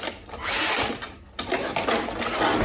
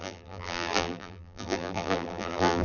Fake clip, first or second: second